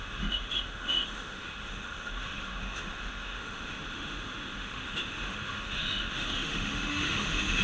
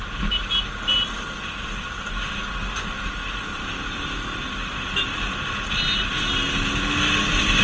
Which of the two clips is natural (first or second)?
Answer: second